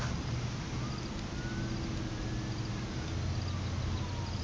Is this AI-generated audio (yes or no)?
no